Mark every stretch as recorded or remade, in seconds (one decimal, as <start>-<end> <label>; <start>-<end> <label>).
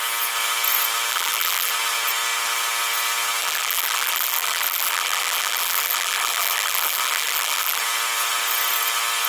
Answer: 0.0-1.1 recorded; 1.1-1.7 remade; 1.7-3.4 recorded; 3.4-7.8 remade; 7.8-9.3 recorded